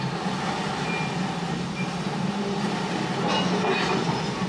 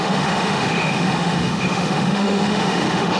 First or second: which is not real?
second